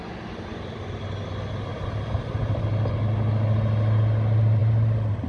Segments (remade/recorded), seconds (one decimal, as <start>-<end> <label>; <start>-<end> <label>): 0.0-1.7 recorded; 1.7-2.6 remade; 2.6-5.3 recorded

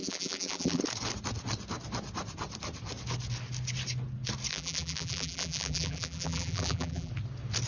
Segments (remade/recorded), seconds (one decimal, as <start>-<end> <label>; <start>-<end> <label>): 0.0-0.8 remade; 0.8-4.5 recorded; 4.5-7.1 remade; 7.1-7.7 recorded

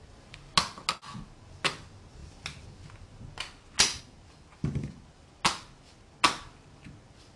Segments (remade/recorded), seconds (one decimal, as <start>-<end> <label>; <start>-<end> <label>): 0.0-7.4 recorded

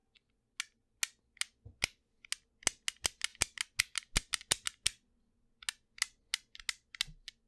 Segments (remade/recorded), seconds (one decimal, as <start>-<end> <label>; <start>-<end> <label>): 0.0-7.5 recorded

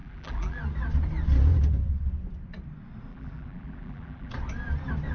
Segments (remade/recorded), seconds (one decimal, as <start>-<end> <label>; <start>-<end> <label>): 0.0-0.6 remade; 0.6-3.1 recorded; 3.1-4.3 remade; 4.3-5.1 recorded

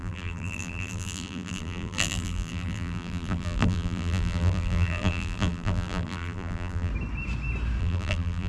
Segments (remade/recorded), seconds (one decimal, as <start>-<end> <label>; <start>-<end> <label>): 0.0-6.9 remade; 6.9-7.8 recorded; 7.8-8.5 remade

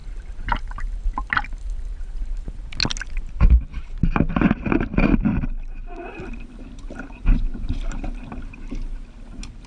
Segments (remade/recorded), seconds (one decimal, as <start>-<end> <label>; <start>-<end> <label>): 0.0-5.8 recorded; 5.8-8.2 remade; 8.2-9.7 recorded